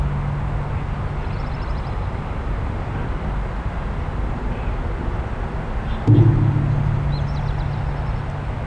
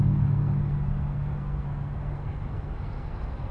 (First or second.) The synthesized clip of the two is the second